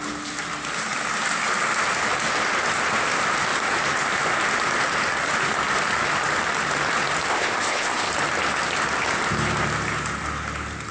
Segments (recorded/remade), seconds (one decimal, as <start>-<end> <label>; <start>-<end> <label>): 0.0-7.3 recorded; 7.3-8.1 remade; 8.1-10.9 recorded